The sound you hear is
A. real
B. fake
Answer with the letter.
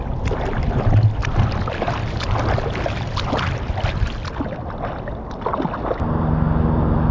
A